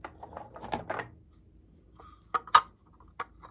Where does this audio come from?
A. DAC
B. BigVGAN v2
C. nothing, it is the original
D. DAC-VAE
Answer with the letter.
C